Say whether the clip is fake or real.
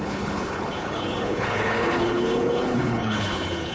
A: fake